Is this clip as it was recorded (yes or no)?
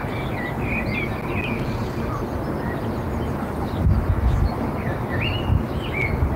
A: yes